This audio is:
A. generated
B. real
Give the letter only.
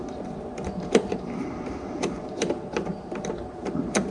A